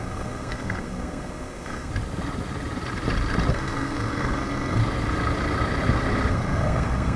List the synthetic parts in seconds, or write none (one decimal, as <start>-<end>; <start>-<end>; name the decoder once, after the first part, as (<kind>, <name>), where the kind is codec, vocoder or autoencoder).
0.0-1.9 (codec, SNAC); 3.5-4.8; 6.3-7.2